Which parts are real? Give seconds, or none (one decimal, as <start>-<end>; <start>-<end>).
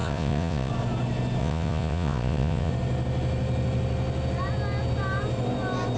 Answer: 0.7-1.4; 2.7-6.0